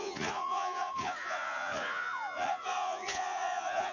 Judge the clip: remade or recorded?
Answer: remade